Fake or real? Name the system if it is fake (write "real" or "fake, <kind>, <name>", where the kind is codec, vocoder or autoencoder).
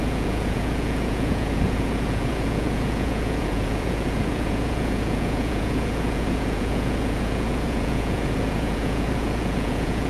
fake, vocoder, Vocos